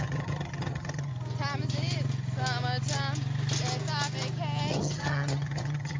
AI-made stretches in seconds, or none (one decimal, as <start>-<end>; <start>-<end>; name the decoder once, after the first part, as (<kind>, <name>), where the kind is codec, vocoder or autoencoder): 0.0-1.1 (vocoder, HiFi-GAN); 4.7-6.0